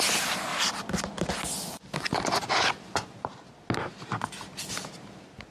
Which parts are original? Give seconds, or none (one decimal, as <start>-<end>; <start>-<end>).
0.0-5.5